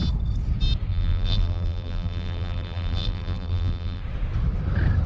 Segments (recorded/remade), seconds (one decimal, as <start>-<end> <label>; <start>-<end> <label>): 0.0-0.9 recorded; 0.9-4.0 remade; 4.0-5.1 recorded